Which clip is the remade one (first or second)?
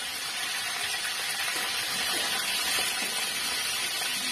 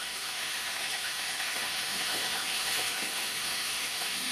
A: second